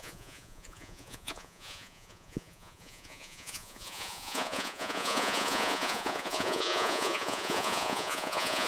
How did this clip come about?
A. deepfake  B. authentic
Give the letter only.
A